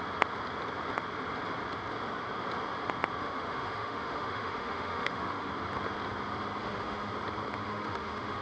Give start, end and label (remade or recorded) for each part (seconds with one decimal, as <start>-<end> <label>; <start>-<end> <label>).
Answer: 0.0-3.2 recorded; 3.2-5.5 remade; 5.5-6.6 recorded; 6.6-7.1 remade; 7.1-7.6 recorded; 7.6-8.4 remade